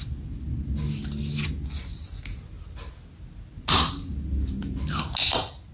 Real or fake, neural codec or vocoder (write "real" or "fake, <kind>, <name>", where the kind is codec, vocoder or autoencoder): real